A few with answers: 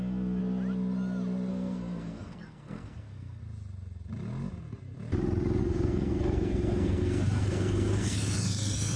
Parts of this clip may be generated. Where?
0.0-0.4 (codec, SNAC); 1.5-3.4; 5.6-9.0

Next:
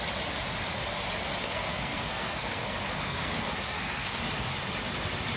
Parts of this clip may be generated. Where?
1.4-4.2 (codec, SNAC)

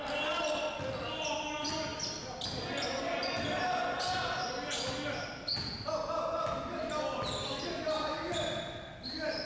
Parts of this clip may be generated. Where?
none

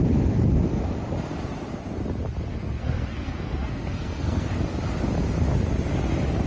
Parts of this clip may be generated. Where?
2.5-4.5 (codec, SNAC)

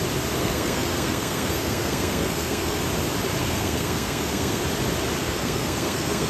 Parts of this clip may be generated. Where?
0.4-2.8 (codec, SNAC); 3.4-4.6; 5.2-6.3